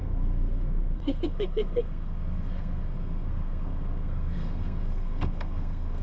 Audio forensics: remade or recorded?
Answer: remade